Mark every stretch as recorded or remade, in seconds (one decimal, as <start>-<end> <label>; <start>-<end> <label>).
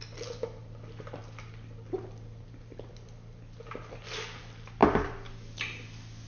0.0-6.3 recorded